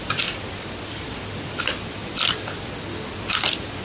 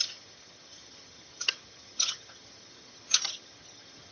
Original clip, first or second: first